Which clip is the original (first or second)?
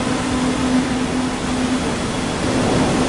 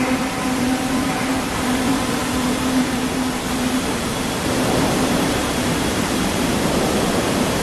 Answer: first